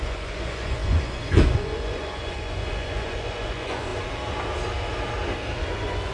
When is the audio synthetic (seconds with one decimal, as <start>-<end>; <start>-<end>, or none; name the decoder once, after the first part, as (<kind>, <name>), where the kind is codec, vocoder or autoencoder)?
0.0-3.9 (vocoder, Vocos); 5.6-6.1